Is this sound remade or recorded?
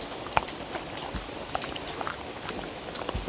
recorded